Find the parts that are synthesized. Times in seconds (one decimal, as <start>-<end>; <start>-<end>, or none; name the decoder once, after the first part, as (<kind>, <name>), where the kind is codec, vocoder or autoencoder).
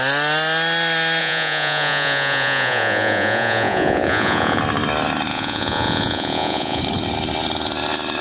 1.2-4.6 (vocoder, Vocos); 5.3-6.8